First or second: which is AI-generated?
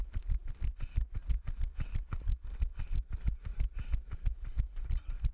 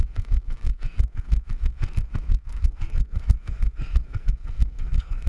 second